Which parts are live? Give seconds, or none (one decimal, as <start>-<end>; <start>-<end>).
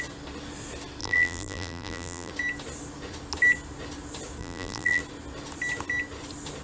0.0-1.0; 2.3-4.4; 5.0-6.6